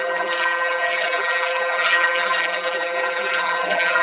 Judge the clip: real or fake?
fake